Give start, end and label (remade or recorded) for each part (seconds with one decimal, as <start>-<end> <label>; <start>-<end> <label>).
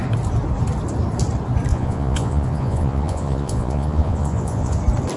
0.0-1.7 recorded; 1.7-4.8 remade; 4.8-5.2 recorded